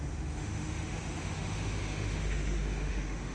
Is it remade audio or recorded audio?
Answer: remade